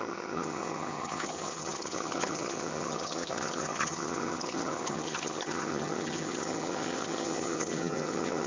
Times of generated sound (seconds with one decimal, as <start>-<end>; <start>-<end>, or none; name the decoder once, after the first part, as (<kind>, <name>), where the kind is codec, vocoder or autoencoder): 0.0-8.5 (vocoder, HiFi-GAN)

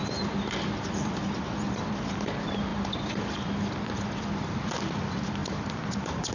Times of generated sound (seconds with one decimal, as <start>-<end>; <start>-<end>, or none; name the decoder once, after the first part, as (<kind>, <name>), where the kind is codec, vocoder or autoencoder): none

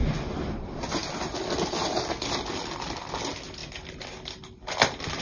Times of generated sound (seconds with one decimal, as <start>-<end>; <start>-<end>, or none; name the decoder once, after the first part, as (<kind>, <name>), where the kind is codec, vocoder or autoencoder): none

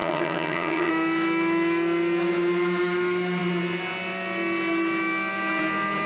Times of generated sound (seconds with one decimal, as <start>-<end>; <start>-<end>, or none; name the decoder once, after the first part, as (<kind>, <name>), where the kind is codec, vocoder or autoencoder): 0.0-0.9 (vocoder, HiFi-GAN)

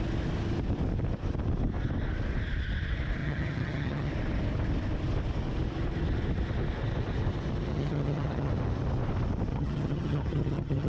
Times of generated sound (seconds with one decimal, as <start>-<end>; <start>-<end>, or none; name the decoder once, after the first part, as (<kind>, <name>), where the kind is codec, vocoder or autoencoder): 3.2-4.1 (vocoder, HiFi-GAN); 7.7-8.5; 9.5-10.9

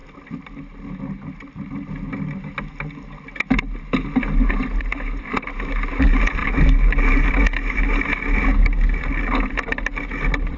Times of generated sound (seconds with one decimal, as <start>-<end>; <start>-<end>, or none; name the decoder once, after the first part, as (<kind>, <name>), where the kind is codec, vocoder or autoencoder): none

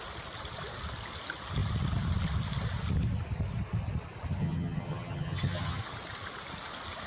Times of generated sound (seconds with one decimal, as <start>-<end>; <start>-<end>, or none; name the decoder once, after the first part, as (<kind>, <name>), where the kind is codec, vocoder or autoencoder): 4.4-5.8 (vocoder, HiFi-GAN)